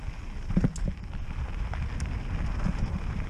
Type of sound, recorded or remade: recorded